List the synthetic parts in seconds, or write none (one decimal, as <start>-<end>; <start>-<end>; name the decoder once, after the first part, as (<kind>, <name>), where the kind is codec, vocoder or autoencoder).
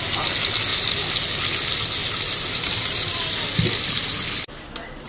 2.0-3.4 (vocoder, BigVGAN v2)